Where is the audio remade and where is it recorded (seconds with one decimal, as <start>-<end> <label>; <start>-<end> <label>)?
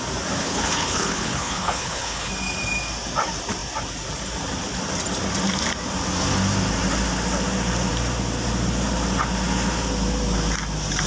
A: 0.0-0.4 recorded; 0.4-2.3 remade; 2.3-11.1 recorded